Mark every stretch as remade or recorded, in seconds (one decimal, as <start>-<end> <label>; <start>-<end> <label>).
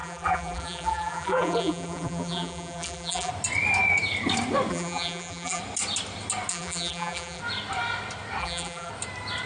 0.0-3.3 remade; 3.3-4.7 recorded; 4.7-5.6 remade; 5.6-6.5 recorded; 6.5-7.4 remade; 7.4-8.4 recorded; 8.4-8.9 remade; 8.9-9.5 recorded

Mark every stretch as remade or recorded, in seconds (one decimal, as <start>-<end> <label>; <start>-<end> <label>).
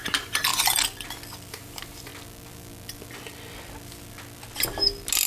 0.0-0.5 remade; 0.5-1.5 recorded; 1.5-2.1 remade; 2.1-5.3 recorded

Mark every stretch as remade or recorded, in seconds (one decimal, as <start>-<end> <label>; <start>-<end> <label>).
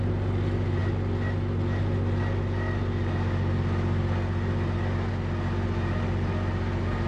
0.0-7.1 recorded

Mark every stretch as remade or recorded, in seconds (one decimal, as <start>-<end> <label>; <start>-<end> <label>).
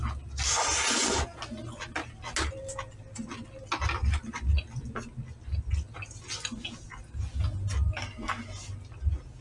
0.0-4.0 recorded; 4.0-4.8 remade; 4.8-9.4 recorded